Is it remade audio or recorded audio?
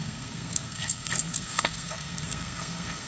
remade